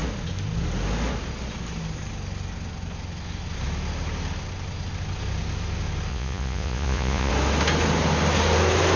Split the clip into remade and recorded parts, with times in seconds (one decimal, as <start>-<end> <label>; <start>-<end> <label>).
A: 0.0-6.1 recorded; 6.1-7.3 remade; 7.3-9.0 recorded